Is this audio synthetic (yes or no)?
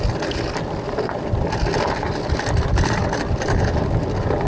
no